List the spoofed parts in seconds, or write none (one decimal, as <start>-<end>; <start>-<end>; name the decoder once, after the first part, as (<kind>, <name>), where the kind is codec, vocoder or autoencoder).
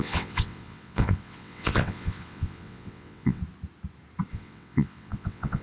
0.0-3.4 (vocoder, WaveNeXt); 4.3-5.6